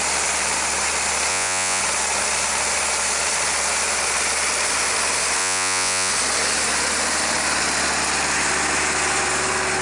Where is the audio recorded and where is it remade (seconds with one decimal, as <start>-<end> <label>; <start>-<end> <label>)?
0.0-1.3 recorded; 1.3-1.8 remade; 1.8-5.4 recorded; 5.4-6.1 remade; 6.1-9.8 recorded